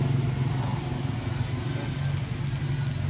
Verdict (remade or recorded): recorded